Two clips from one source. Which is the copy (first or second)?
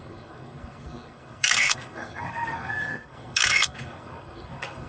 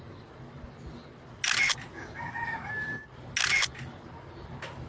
first